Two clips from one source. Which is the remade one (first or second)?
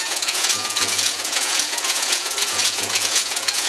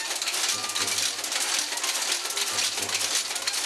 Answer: first